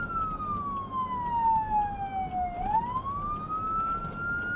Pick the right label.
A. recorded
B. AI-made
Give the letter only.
A